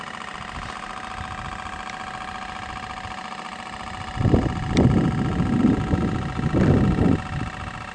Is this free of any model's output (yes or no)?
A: yes